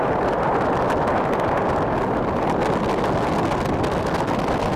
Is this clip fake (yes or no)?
no